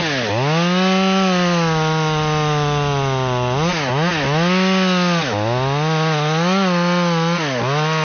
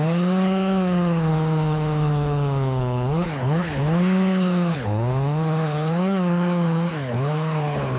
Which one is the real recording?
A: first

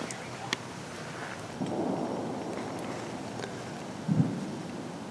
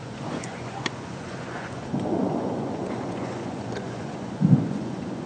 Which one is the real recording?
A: first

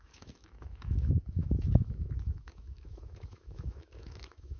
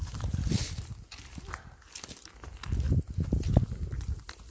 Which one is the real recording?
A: second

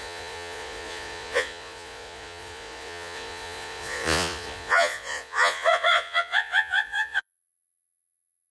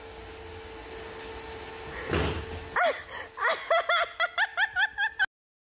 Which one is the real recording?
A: second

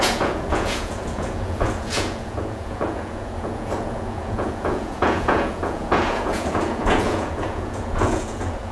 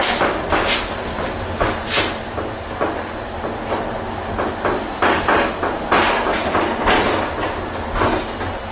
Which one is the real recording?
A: second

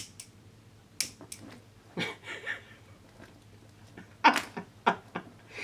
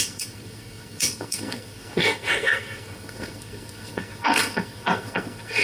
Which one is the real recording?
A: first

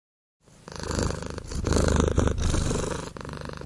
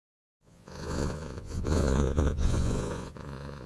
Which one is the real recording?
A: first